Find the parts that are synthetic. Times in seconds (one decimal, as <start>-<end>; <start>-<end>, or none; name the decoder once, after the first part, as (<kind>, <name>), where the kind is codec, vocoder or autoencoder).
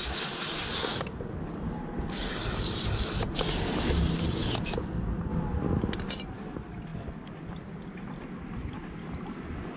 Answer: none